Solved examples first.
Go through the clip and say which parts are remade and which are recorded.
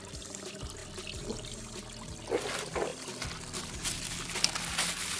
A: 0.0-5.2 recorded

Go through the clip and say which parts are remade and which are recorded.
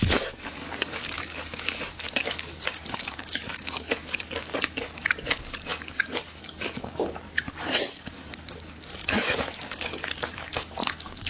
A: 0.0-11.3 remade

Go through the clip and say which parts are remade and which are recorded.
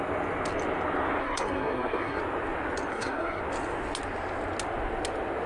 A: 0.0-1.2 recorded; 1.2-2.2 remade; 2.2-2.9 recorded; 2.9-3.4 remade; 3.4-5.5 recorded